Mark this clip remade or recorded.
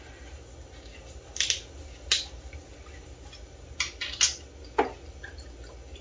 recorded